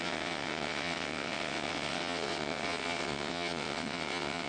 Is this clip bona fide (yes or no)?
no